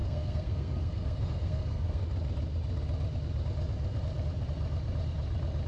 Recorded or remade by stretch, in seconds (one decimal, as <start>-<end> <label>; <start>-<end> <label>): 0.0-2.0 remade; 2.0-5.7 recorded